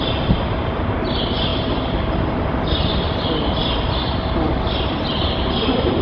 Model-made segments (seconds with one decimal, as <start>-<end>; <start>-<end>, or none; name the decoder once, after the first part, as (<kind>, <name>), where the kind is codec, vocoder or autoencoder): 1.5-2.1 (vocoder, BigVGAN v2)